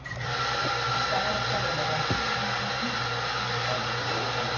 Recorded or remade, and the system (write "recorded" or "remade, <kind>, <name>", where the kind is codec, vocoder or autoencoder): recorded